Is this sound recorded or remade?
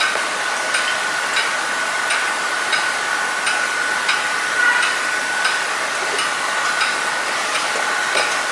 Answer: recorded